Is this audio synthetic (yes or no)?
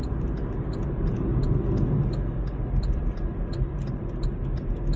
no